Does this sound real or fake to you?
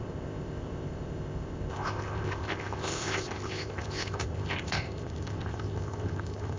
fake